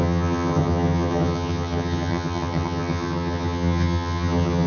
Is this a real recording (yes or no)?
no